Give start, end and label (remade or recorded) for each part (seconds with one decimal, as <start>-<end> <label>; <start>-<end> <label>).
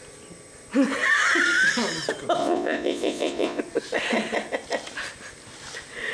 0.0-2.4 recorded; 2.4-3.6 remade; 3.6-6.1 recorded